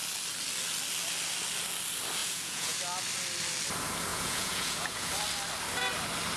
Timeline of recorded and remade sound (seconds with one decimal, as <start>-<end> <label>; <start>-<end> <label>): 0.0-2.2 recorded; 2.2-2.8 remade; 2.8-4.1 recorded; 4.1-5.1 remade; 5.1-6.4 recorded